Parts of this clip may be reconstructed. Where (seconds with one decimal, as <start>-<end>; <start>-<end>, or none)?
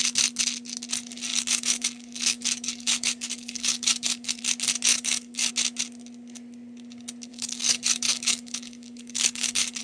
1.3-4.4; 4.9-5.5; 7.3-9.8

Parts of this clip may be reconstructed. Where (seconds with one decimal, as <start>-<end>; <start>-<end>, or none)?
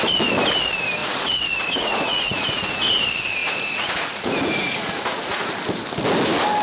1.0-2.8; 3.4-5.5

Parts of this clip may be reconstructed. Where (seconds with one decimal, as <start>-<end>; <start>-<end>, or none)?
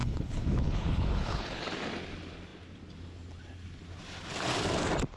0.0-1.6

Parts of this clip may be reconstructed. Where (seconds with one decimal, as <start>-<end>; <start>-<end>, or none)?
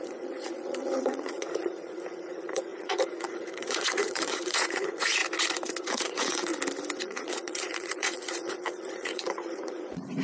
0.0-5.2; 5.9-6.5; 7.0-10.2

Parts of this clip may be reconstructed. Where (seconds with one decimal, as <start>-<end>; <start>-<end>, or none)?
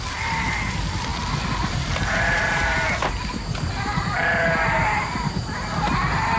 none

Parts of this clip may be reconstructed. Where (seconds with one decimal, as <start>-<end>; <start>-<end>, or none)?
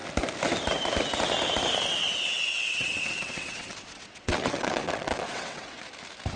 2.0-5.8